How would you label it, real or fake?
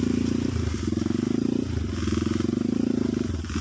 real